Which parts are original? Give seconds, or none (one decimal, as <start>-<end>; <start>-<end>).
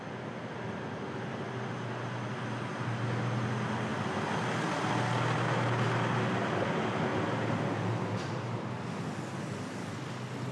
0.0-10.5